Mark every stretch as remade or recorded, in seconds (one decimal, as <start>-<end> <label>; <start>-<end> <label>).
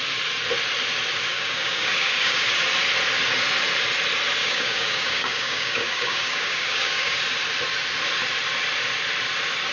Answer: 0.0-1.3 recorded; 1.3-2.5 remade; 2.5-4.4 recorded; 4.4-7.2 remade; 7.2-9.7 recorded